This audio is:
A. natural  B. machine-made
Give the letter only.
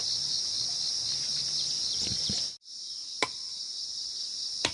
A